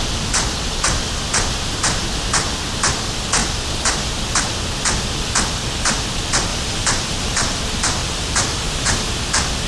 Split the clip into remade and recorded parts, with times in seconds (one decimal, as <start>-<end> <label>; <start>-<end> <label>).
0.0-6.5 recorded; 6.5-7.6 remade; 7.6-8.0 recorded; 8.0-9.1 remade; 9.1-9.7 recorded